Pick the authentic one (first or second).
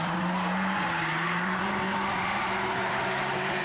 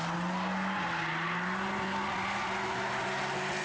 second